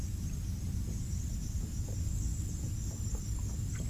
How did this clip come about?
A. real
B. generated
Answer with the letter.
A